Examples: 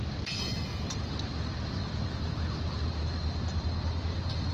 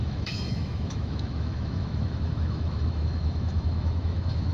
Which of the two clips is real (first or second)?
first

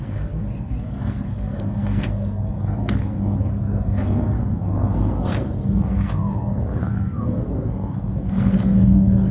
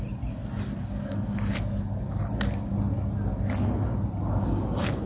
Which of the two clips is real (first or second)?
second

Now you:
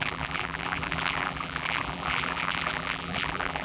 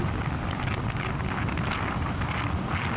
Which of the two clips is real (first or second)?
second